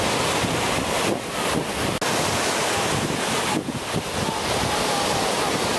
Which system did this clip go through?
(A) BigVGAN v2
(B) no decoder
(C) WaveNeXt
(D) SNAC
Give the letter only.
B